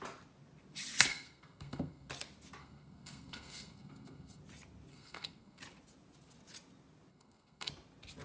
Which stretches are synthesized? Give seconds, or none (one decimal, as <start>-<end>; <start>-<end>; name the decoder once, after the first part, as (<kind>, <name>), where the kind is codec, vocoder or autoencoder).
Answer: 1.1-2.1 (codec, SNAC); 2.6-4.4; 4.9-5.6; 7.1-7.7